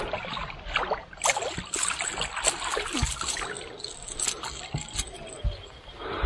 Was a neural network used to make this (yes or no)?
no